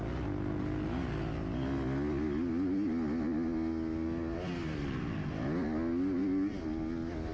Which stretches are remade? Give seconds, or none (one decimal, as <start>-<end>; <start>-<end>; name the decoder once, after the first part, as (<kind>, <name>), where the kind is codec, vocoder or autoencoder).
none